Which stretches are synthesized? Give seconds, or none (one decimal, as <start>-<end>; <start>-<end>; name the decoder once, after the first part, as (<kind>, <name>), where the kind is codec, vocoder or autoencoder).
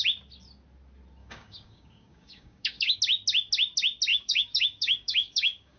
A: 1.2-3.0 (codec, DAC); 4.1-5.8